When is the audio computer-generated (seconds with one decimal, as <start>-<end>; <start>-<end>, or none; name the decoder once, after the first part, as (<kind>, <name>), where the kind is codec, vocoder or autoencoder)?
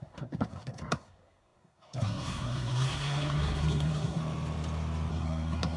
0.0-4.2 (codec, SNAC); 5.1-5.8